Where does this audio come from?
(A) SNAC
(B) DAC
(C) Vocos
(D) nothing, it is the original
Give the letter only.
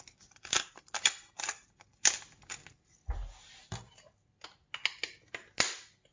D